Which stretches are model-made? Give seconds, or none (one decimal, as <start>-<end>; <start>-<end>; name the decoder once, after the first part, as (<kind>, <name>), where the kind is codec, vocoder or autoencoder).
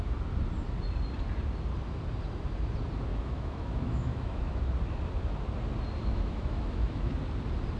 3.1-4.6 (autoencoder, DAC-VAE); 6.0-7.1